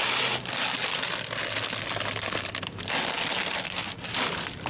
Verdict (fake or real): real